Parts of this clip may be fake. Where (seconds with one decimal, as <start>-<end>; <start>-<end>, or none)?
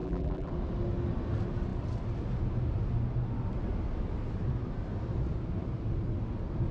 0.0-0.5